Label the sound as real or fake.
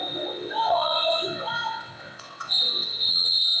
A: fake